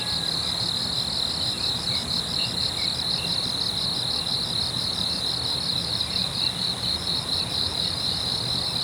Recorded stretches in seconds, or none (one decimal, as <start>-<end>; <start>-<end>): 0.0-5.7; 8.3-8.8